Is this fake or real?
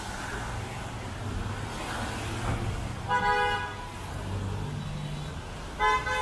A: real